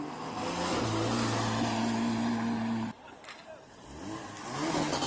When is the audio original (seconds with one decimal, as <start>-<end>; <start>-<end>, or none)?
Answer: 0.0-5.1